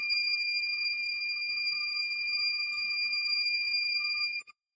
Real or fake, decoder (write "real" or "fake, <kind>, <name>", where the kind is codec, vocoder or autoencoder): fake, codec, SNAC